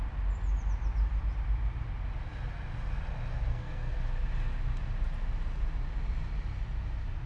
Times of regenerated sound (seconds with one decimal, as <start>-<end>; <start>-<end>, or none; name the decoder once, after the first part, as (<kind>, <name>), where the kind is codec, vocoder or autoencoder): 3.5-4.0 (codec, SNAC)